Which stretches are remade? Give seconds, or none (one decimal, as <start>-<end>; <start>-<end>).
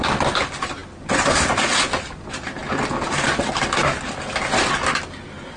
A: none